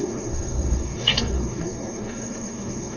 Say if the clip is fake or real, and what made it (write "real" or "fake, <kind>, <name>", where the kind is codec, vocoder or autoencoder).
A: fake, codec, SNAC